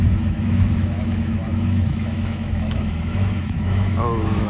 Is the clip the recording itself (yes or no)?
no